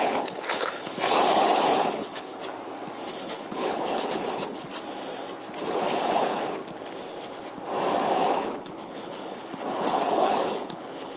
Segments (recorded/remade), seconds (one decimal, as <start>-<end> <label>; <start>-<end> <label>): 0.0-2.4 remade; 2.4-3.1 recorded; 3.1-4.7 remade; 4.7-5.6 recorded; 5.6-6.6 remade; 6.6-8.2 recorded; 8.2-11.2 remade